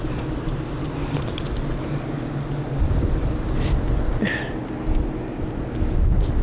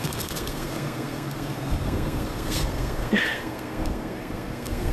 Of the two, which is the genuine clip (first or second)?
first